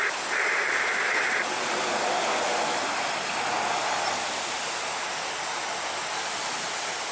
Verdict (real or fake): real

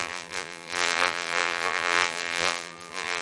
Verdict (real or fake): fake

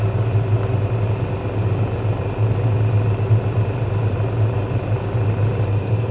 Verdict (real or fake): real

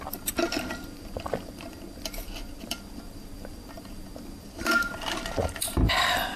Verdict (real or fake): fake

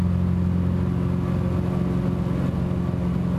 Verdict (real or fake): real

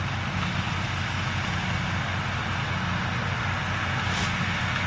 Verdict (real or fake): real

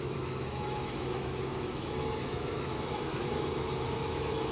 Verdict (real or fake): fake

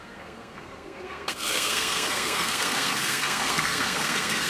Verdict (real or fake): fake